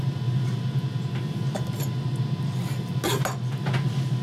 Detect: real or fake real